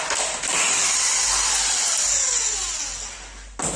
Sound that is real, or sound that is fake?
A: real